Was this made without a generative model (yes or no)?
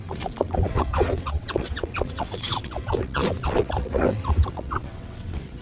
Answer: no